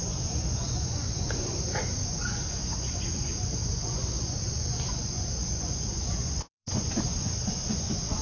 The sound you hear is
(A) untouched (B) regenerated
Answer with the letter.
B